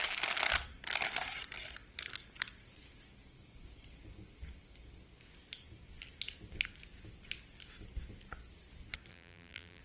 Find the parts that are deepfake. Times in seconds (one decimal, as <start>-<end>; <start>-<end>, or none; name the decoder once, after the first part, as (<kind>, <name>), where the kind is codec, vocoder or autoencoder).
9.1-9.8 (vocoder, BigVGAN v2)